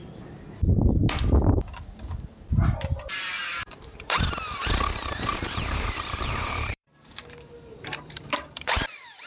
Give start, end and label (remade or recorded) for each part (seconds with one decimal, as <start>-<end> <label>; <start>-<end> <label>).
0.0-1.0 remade; 1.0-3.4 recorded; 3.4-9.3 remade